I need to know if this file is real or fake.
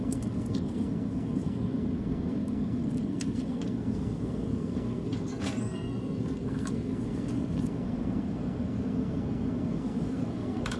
fake